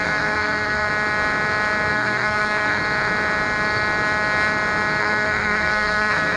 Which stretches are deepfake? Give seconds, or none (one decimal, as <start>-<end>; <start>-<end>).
0.0-0.9; 1.9-2.8; 5.0-6.4